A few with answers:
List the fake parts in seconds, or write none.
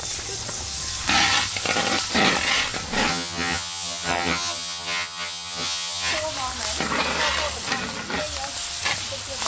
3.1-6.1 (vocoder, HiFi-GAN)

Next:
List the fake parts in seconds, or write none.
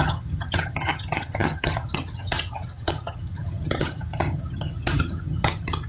0.0-5.9 (vocoder, HiFi-GAN)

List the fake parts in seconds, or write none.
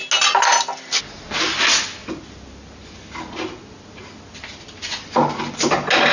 none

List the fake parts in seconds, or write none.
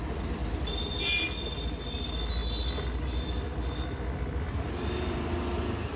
none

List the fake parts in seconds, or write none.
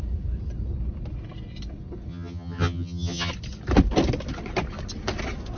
2.1-3.3 (vocoder, HiFi-GAN)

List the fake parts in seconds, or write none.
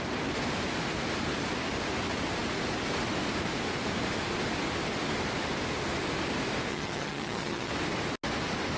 6.7-7.7 (vocoder, HiFi-GAN)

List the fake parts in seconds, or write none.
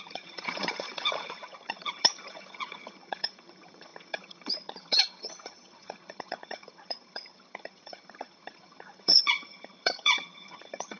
0.0-11.0 (vocoder, HiFi-GAN)